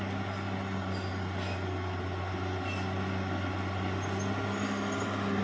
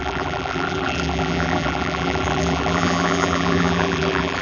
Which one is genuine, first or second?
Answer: first